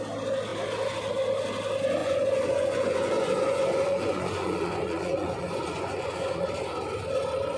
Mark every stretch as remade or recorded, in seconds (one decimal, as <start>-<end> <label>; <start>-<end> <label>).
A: 0.0-2.0 recorded; 2.0-6.5 remade; 6.5-7.6 recorded